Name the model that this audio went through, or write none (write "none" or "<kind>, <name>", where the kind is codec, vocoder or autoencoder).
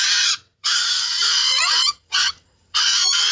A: vocoder, Vocos